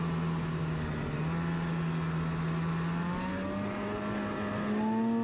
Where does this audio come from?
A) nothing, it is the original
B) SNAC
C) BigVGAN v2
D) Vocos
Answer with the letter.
A